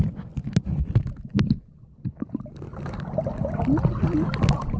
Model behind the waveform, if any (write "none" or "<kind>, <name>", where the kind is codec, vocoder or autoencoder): none